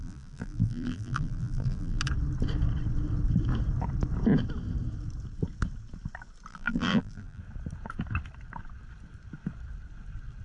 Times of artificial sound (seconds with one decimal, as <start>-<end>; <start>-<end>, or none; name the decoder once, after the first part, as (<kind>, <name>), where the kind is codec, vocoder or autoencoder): 0.0-2.0 (vocoder, BigVGAN v2); 6.5-7.4